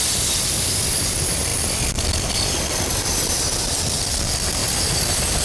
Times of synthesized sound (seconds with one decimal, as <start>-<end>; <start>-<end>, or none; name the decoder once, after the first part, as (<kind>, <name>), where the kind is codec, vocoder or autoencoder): 0.0-4.6 (vocoder, BigVGAN v2)